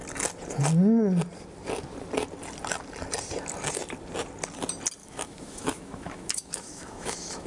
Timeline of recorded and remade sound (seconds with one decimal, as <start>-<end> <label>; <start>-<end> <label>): 0.0-5.0 recorded; 5.0-7.5 remade